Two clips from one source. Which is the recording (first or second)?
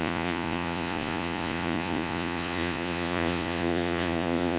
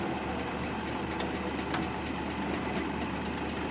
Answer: second